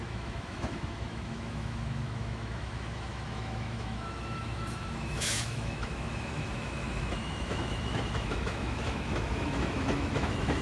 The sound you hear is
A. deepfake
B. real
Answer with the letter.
A